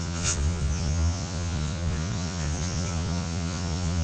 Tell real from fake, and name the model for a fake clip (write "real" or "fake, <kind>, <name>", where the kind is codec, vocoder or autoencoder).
fake, vocoder, Vocos